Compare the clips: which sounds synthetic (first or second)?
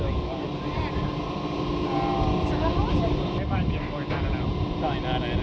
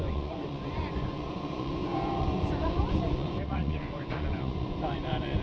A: second